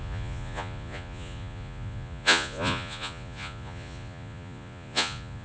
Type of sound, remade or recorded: remade